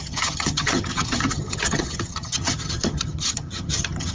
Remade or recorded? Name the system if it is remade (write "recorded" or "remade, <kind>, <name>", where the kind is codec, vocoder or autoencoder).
remade, vocoder, HiFi-GAN